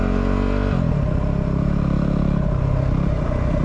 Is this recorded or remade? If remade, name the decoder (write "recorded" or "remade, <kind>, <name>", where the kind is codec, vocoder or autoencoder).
recorded